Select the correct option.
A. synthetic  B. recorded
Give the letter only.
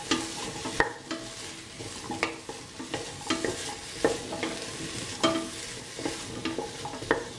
B